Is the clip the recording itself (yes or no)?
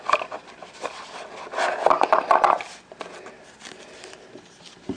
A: yes